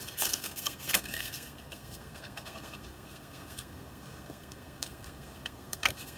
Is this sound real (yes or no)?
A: no